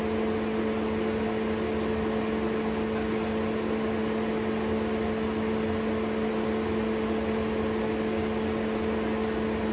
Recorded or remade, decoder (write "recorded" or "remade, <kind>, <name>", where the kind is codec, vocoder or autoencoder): recorded